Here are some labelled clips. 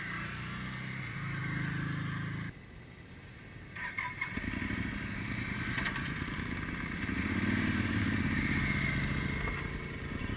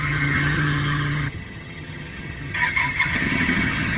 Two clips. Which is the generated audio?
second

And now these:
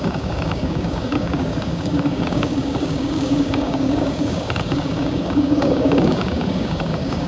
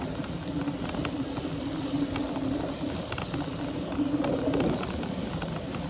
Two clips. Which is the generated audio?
first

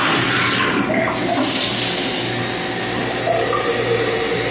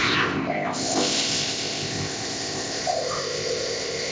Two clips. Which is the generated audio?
second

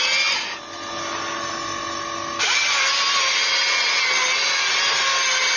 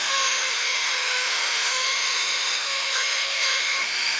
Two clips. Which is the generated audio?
second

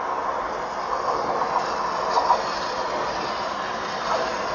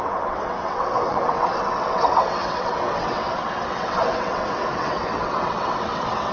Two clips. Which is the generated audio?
second